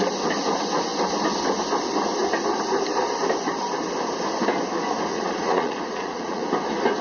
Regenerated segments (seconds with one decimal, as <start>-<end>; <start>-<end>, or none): 5.1-6.4